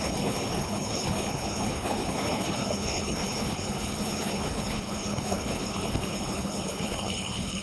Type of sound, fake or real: fake